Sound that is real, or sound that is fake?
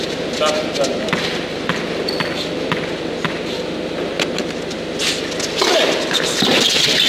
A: real